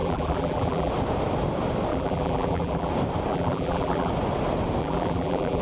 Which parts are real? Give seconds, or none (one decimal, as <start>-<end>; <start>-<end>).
0.9-1.9; 2.9-3.3; 4.1-4.8